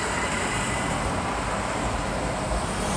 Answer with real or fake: fake